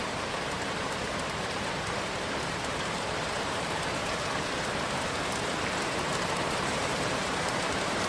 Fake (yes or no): yes